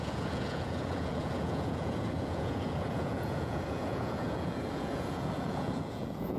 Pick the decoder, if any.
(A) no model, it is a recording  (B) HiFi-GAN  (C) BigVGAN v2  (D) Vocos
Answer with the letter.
D